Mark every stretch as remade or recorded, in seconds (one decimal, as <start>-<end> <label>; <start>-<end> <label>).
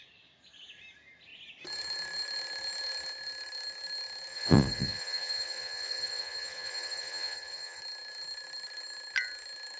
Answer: 0.0-4.3 recorded; 4.3-7.8 remade; 7.8-9.8 recorded